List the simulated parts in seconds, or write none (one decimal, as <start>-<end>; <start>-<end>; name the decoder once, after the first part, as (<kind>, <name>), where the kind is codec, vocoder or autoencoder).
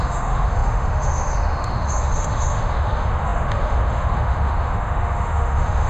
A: 0.0-5.9 (autoencoder, DAC-VAE)